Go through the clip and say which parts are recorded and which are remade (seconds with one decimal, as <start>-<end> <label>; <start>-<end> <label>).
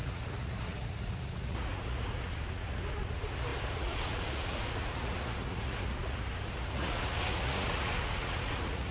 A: 0.0-8.9 remade